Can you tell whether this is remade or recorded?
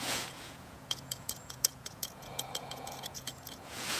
remade